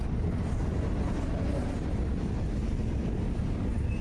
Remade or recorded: recorded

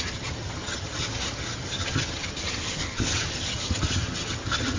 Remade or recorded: remade